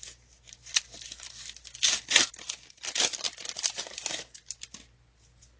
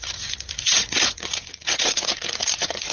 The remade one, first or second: second